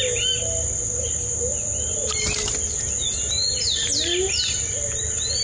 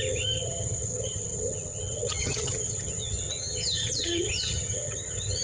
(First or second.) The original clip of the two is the first